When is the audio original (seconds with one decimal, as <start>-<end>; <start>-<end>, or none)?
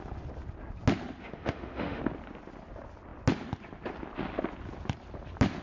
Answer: 0.0-1.2; 2.0-5.6